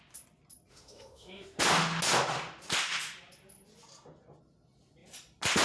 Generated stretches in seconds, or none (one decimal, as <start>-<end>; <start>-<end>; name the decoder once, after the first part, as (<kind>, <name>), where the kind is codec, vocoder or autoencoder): 0.7-1.6 (autoencoder, DAC-VAE)